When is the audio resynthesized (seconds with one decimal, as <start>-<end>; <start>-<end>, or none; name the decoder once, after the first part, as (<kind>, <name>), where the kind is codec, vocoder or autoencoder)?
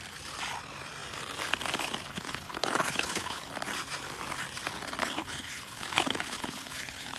2.1-3.5 (codec, HILCodec); 5.0-7.2